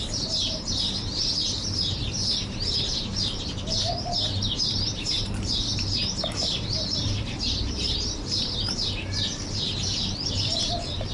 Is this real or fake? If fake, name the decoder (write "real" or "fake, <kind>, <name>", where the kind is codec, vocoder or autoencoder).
fake, vocoder, BigVGAN v2